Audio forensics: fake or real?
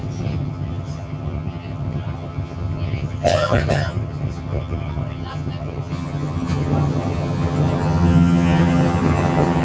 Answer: fake